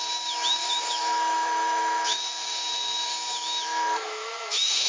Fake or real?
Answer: fake